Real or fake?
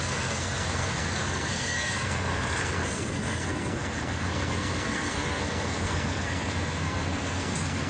fake